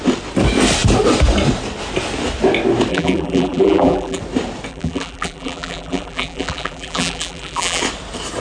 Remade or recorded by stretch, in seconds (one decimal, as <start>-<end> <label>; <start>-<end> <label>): 0.0-2.9 recorded; 2.9-4.2 remade; 4.2-4.7 recorded; 4.7-7.8 remade; 7.8-8.4 recorded